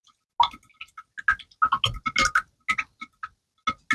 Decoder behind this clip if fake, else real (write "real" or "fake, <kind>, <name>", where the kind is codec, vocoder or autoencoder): real